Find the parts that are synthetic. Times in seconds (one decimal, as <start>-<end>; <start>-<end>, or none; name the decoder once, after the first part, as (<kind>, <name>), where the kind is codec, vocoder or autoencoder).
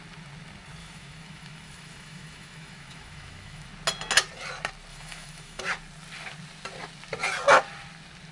0.8-3.7 (autoencoder, DAC-VAE); 4.9-5.6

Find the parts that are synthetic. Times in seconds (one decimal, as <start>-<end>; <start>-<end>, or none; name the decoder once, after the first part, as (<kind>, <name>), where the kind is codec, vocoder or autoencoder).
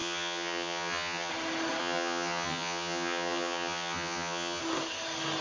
0.0-1.3 (vocoder, HiFi-GAN); 1.8-4.6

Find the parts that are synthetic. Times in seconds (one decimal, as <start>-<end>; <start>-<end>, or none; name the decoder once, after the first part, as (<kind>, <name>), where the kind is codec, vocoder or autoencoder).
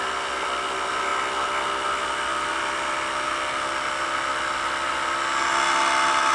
none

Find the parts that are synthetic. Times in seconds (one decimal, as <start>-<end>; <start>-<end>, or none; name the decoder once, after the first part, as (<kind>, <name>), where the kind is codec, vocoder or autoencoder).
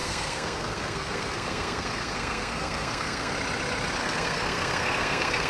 0.0-3.3 (codec, SNAC); 4.0-5.5